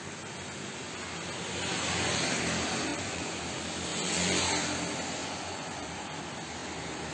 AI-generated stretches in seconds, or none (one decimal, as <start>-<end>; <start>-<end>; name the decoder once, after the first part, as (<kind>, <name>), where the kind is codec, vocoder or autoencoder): 2.9-3.4 (vocoder, Vocos); 3.9-4.5; 5.2-6.1